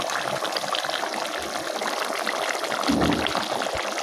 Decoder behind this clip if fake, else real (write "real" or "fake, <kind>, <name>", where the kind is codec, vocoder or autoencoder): real